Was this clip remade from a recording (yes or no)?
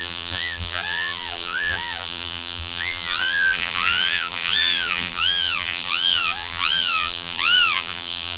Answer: yes